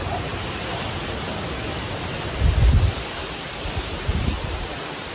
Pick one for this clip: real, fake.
real